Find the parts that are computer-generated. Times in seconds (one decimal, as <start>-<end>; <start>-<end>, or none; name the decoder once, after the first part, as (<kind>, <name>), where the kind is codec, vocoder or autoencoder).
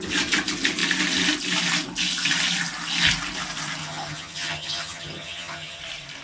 3.8-5.8 (vocoder, HiFi-GAN)